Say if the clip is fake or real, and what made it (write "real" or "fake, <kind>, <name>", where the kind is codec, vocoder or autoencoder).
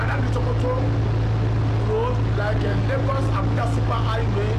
real